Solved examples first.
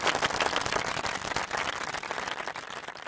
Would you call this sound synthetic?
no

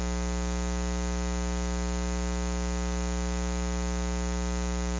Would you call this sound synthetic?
no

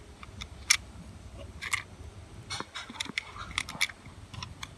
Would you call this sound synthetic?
no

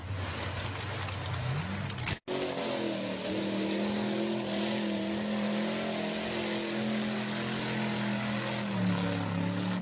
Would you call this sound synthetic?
no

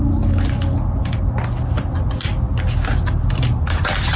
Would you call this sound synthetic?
no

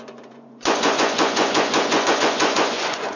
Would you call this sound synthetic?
yes